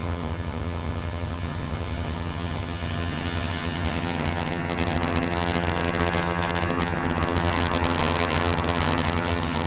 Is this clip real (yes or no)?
no